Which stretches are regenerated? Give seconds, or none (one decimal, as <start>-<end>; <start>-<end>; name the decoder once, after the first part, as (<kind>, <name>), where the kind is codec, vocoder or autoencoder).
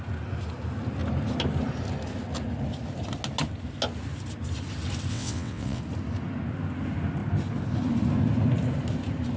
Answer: 5.1-5.8 (vocoder, WaveNeXt)